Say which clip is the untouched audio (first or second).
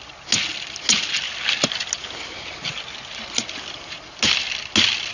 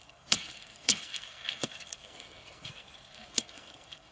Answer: first